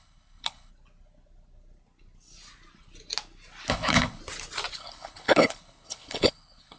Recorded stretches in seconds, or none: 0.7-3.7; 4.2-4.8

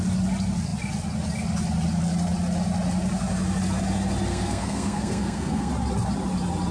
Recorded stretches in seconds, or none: 0.0-4.3; 5.7-6.7